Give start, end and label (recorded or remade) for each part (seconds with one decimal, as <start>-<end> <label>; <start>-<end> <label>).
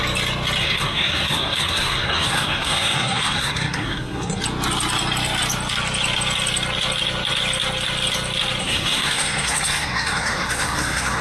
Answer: 0.0-0.6 recorded; 0.6-4.4 remade; 4.4-8.6 recorded; 8.6-11.2 remade